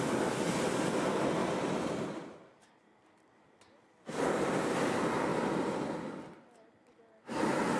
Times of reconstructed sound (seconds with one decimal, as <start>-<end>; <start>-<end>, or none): 1.4-4.3; 5.3-7.8